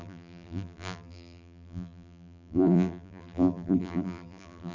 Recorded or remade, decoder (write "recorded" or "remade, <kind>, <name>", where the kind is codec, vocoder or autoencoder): remade, vocoder, BigVGAN v2